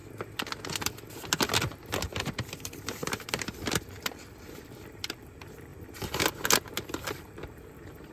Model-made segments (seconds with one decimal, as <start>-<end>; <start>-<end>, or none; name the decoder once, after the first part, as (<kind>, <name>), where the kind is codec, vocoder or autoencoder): 1.8-5.7 (vocoder, BigVGAN v2); 6.7-8.1